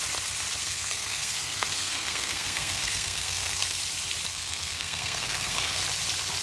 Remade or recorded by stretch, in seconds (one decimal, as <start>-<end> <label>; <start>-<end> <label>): 0.0-0.6 recorded; 0.6-3.8 remade; 3.8-4.3 recorded; 4.3-5.8 remade; 5.8-6.4 recorded